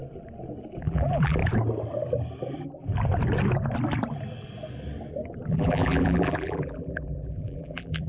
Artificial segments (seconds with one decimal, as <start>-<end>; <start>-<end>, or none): 0.8-1.4; 5.5-8.1